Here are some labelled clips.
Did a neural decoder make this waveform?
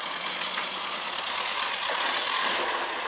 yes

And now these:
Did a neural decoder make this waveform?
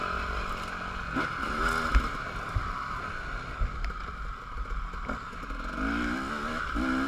no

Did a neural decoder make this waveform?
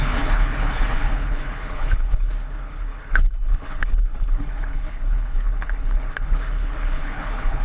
yes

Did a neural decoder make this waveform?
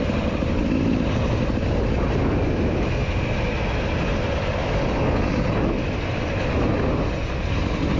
no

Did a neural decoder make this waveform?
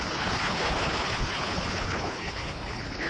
yes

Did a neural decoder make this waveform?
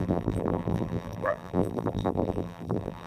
yes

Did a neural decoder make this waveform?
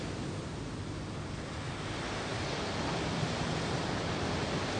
no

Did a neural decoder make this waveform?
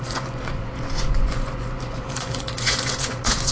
yes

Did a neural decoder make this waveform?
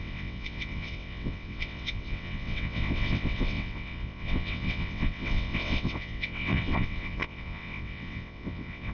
yes